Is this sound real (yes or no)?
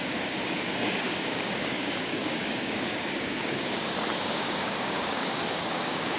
no